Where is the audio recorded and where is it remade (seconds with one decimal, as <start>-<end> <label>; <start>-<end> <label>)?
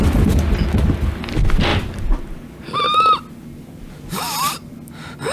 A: 0.0-5.3 recorded